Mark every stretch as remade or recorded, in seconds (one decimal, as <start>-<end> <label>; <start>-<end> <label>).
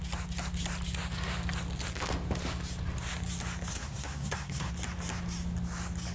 0.0-3.7 recorded; 3.7-4.7 remade; 4.7-6.1 recorded